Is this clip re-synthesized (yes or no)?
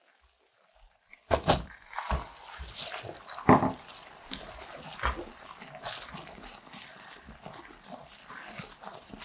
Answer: yes